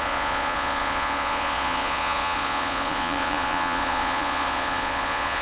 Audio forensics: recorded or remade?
remade